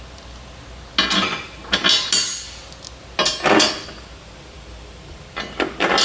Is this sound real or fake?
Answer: real